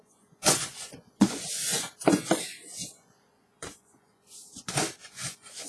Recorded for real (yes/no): no